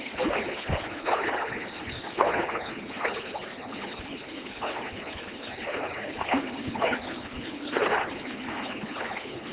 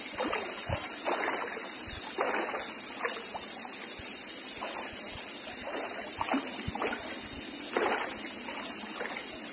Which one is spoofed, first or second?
first